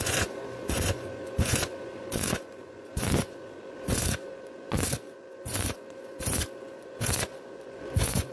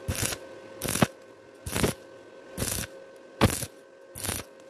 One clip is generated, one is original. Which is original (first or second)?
second